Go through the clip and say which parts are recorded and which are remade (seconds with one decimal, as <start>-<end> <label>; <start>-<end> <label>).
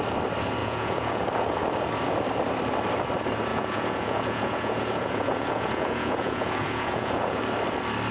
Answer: 0.0-0.6 recorded; 0.6-1.2 remade; 1.2-3.5 recorded; 3.5-7.4 remade; 7.4-8.1 recorded